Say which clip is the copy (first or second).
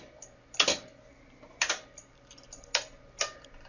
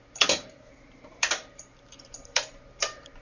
second